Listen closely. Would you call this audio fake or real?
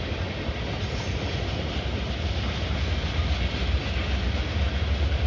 real